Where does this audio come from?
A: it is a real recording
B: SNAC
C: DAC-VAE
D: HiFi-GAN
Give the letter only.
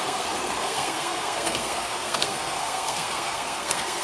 B